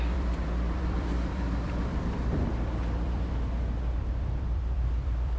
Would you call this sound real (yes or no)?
no